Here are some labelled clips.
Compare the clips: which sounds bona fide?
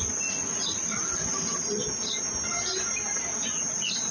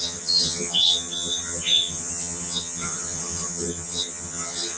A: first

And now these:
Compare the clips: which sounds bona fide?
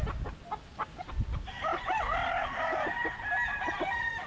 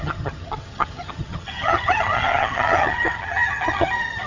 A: first